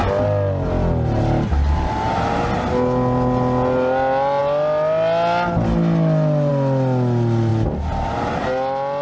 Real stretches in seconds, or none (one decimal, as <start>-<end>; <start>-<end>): 0.0-9.0